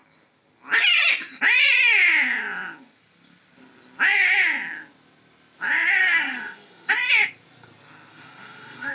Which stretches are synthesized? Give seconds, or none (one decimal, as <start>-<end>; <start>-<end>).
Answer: 6.0-6.9; 8.1-8.9